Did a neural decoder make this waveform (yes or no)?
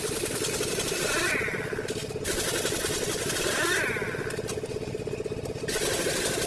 no